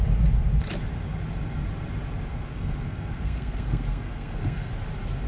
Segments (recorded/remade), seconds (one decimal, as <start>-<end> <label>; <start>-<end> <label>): 0.0-2.3 recorded; 2.3-4.7 remade; 4.7-5.3 recorded